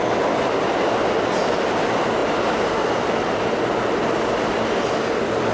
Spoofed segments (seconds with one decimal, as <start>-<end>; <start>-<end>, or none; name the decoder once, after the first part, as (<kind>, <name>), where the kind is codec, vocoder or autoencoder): none